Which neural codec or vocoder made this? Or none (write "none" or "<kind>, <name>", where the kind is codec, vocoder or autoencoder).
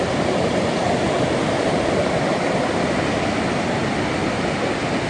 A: none